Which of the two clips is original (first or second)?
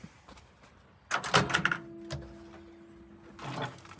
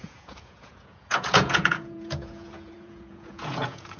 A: first